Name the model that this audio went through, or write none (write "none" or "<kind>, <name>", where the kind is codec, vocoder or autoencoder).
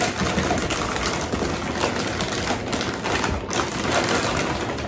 none